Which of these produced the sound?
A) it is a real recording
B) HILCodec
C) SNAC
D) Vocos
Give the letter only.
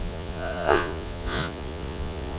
D